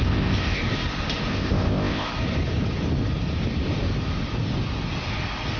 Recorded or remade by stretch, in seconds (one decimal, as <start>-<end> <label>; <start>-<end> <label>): 0.0-0.6 remade; 0.6-1.3 recorded; 1.3-2.1 remade; 2.1-5.6 recorded